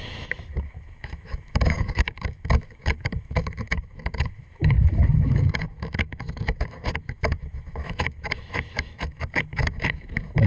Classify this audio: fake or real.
fake